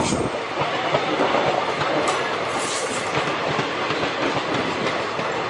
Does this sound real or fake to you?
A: real